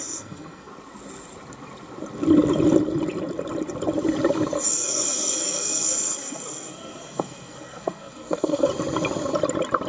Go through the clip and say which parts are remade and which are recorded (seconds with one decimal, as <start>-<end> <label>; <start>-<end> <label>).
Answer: 0.0-0.7 remade; 0.7-4.7 recorded; 4.7-8.7 remade; 8.7-9.9 recorded